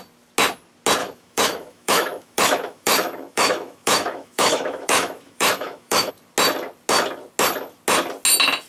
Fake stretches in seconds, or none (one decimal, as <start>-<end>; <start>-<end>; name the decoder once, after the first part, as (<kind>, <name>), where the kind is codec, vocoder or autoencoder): 1.0-6.1 (autoencoder, DAC-VAE)